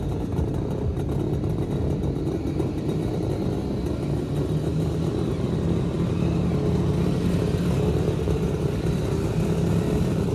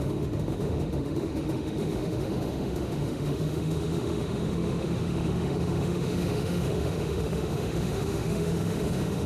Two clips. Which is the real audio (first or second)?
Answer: first